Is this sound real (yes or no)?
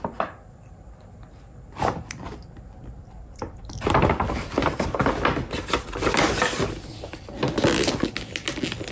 yes